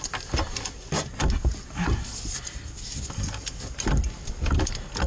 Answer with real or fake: real